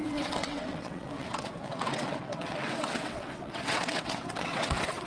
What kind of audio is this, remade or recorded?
remade